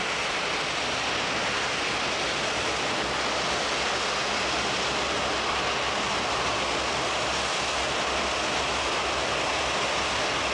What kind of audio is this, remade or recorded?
recorded